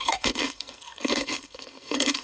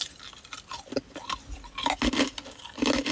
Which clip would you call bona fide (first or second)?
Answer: second